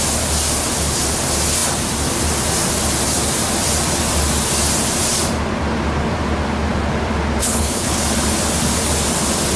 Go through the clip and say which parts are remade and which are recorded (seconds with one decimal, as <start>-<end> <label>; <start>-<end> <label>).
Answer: 0.0-7.4 recorded; 7.4-8.0 remade; 8.0-9.6 recorded